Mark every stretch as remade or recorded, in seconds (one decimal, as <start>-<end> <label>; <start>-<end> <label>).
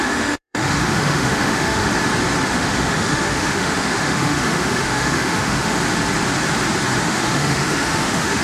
0.0-1.9 remade; 1.9-2.5 recorded; 2.5-5.8 remade; 5.8-7.0 recorded; 7.0-8.4 remade